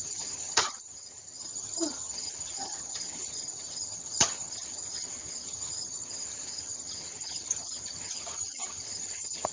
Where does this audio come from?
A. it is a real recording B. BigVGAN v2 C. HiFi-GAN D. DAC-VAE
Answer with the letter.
C